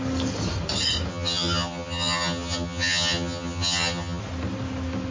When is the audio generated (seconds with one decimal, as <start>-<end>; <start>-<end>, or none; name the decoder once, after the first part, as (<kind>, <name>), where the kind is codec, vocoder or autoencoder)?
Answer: 1.1-4.2 (vocoder, HiFi-GAN)